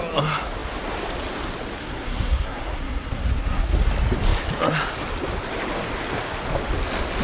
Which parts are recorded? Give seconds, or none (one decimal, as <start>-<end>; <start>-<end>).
0.0-1.8; 3.9-7.2